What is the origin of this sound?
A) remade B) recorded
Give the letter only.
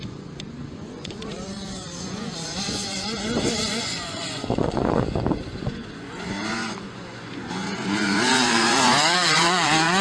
A